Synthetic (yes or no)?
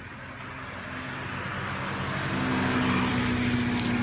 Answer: no